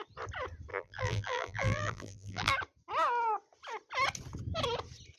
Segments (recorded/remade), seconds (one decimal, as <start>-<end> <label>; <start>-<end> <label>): 0.0-0.7 recorded; 0.7-2.5 remade; 2.5-5.2 recorded